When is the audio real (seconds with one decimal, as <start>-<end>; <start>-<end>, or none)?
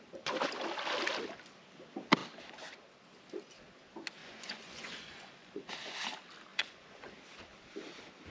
0.0-4.2; 5.7-6.5; 7.1-8.3